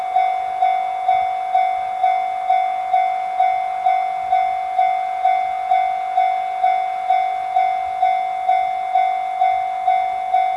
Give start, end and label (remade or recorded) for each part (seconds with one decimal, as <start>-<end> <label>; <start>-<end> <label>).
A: 0.0-10.6 recorded